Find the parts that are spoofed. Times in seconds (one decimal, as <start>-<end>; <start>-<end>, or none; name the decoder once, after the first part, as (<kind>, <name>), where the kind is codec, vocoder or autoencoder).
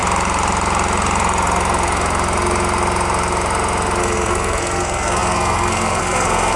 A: 4.0-6.6 (codec, SNAC)